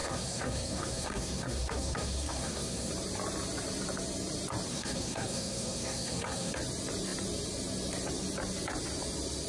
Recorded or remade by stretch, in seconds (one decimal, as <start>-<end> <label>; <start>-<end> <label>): 0.0-2.9 remade; 2.9-4.7 recorded; 4.7-6.5 remade; 6.5-9.5 recorded